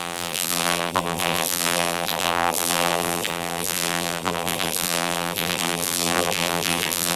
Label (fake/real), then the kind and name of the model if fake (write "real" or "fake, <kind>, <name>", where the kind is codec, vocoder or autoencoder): fake, vocoder, BigVGAN v2